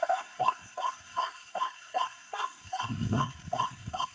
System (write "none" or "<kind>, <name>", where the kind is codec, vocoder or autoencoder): codec, SNAC